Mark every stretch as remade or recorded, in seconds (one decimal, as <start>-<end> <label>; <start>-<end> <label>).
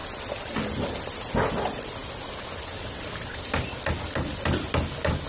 0.0-5.3 recorded